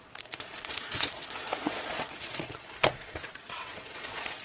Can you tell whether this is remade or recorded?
remade